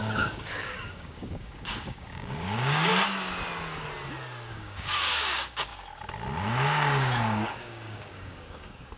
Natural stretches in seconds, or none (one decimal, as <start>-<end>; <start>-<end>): 2.9-4.5; 5.7-6.4